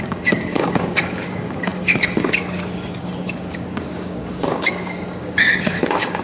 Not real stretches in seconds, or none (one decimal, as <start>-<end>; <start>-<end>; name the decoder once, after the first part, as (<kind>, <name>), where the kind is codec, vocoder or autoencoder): 0.0-6.2 (codec, DAC)